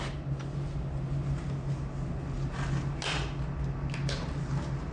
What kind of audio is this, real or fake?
real